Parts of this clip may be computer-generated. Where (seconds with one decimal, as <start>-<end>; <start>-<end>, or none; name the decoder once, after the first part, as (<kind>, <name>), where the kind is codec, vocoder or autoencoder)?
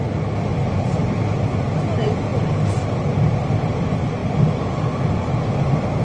none